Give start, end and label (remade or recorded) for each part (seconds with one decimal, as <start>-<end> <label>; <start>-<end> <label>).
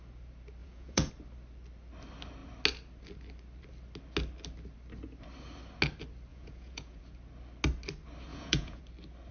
0.0-0.6 recorded; 0.6-1.1 remade; 1.1-6.3 recorded; 6.3-7.0 remade; 7.0-8.3 recorded; 8.3-8.8 remade; 8.8-9.3 recorded